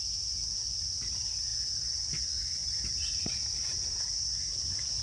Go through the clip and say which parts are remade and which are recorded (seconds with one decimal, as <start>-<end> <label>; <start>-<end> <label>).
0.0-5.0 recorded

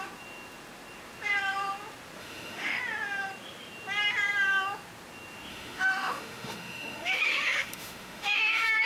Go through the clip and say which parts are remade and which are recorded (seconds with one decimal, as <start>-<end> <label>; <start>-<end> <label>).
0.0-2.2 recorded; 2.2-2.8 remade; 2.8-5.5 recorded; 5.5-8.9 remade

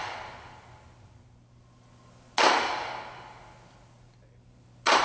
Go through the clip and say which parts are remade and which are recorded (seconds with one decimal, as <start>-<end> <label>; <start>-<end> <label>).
0.0-5.0 recorded

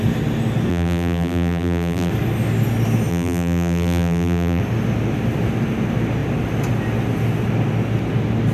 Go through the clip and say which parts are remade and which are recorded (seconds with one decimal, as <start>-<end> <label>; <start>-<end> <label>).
0.0-0.7 recorded; 0.7-2.1 remade; 2.1-3.1 recorded; 3.1-4.6 remade; 4.6-8.5 recorded

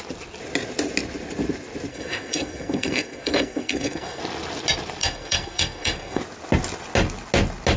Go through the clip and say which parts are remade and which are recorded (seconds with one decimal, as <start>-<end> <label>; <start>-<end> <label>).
0.0-1.9 recorded; 1.9-4.2 remade; 4.2-5.0 recorded; 5.0-6.2 remade; 6.2-7.8 recorded